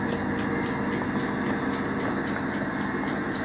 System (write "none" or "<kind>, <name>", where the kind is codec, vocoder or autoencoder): none